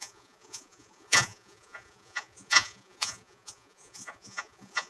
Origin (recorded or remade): remade